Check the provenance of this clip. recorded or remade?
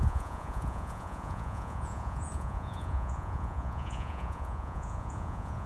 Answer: remade